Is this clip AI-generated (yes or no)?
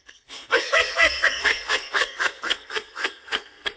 yes